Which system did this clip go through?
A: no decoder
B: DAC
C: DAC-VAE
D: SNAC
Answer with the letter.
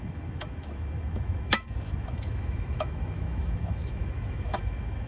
C